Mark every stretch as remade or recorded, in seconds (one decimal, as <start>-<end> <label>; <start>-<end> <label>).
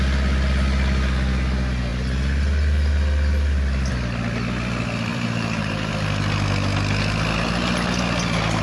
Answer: 0.0-5.1 recorded; 5.1-5.9 remade; 5.9-8.6 recorded